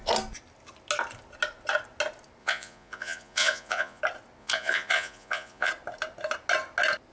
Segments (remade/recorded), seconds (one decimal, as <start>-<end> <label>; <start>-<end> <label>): 0.0-2.4 recorded; 2.4-4.0 remade; 4.0-4.4 recorded; 4.4-5.7 remade; 5.7-7.1 recorded